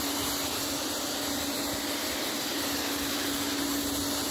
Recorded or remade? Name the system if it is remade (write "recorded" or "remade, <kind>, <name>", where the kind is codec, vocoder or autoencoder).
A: recorded